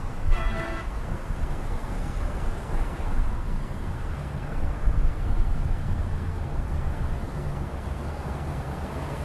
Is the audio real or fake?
fake